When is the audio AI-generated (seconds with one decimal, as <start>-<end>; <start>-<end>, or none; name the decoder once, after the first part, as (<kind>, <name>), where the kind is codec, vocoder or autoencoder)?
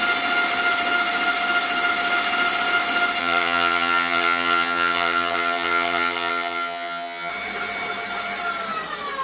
3.2-7.3 (vocoder, HiFi-GAN)